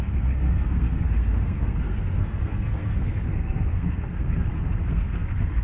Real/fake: fake